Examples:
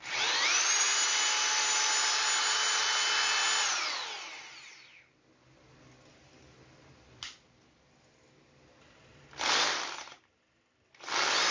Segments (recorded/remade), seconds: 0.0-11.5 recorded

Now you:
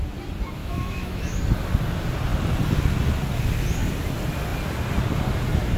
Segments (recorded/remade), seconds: 0.0-0.6 recorded; 0.6-1.4 remade; 1.4-5.8 recorded

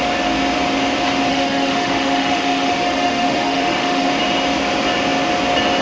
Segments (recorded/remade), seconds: 0.0-1.3 recorded; 1.3-4.1 remade; 4.1-5.8 recorded

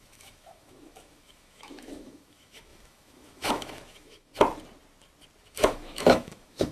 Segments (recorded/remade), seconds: 0.0-4.3 remade; 4.3-5.4 recorded; 5.4-6.7 remade

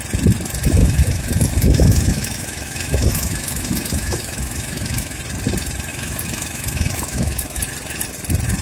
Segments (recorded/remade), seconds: 0.0-0.8 recorded; 0.8-5.2 remade; 5.2-5.9 recorded; 5.9-7.6 remade; 7.6-8.6 recorded

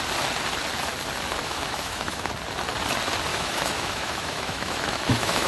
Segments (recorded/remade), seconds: 0.0-1.4 recorded; 1.4-2.3 remade; 2.3-3.3 recorded; 3.3-5.5 remade